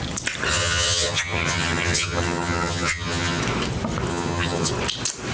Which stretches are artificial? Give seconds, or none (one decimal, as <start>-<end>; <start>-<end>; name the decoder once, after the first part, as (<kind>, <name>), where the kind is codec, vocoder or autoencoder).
0.5-3.4 (vocoder, HiFi-GAN); 4.1-4.7